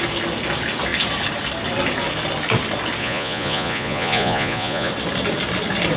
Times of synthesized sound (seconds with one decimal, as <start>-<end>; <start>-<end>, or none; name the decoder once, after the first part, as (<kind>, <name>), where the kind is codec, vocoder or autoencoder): 3.0-4.9 (vocoder, Vocos)